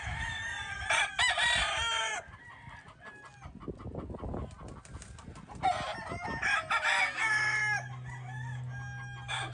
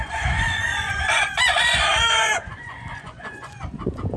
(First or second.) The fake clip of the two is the second